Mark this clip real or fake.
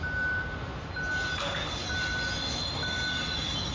real